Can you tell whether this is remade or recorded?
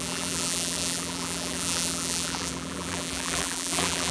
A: remade